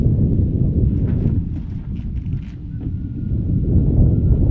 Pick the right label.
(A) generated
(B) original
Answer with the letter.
B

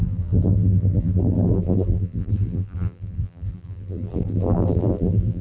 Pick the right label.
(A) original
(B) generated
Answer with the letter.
B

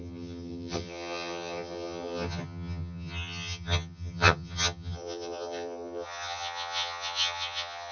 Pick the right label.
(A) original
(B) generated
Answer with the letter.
B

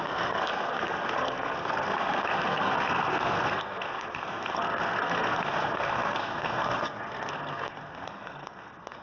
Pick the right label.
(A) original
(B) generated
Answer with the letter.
B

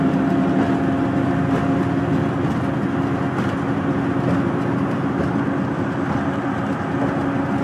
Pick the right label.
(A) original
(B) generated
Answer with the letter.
A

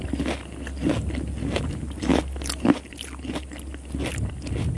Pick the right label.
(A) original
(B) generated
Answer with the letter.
A